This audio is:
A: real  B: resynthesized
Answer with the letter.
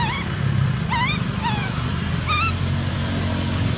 A